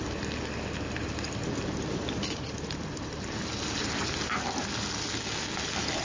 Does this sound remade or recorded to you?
recorded